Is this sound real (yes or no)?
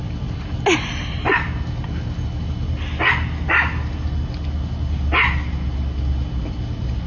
yes